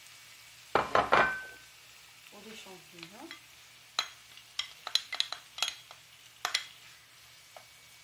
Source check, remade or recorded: recorded